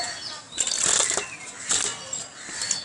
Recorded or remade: recorded